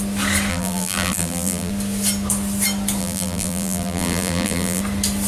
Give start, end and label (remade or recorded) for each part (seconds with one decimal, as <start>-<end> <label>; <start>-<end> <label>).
0.0-0.5 recorded; 0.5-1.7 remade; 1.7-3.0 recorded; 3.0-4.8 remade; 4.8-5.3 recorded